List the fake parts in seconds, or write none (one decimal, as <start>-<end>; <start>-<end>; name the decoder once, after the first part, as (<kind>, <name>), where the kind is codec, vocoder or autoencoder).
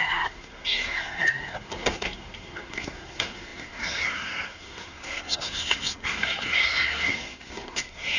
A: 0.0-8.2 (codec, SNAC)